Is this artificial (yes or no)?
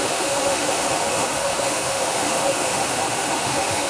yes